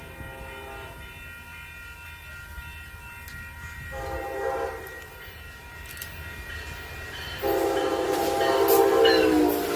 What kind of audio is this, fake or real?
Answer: real